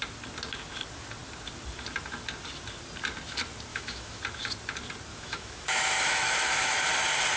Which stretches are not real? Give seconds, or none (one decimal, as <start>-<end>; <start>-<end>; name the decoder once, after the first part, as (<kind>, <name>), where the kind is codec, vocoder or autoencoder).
3.7-4.2 (autoencoder, DAC-VAE); 5.1-6.9